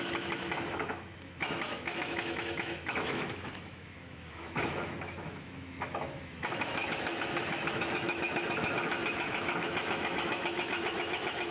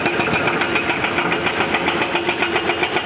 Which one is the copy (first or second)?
first